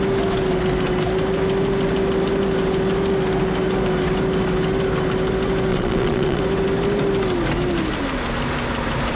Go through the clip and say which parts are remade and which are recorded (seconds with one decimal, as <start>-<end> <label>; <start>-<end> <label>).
0.0-5.7 recorded; 5.7-6.4 remade; 6.4-9.2 recorded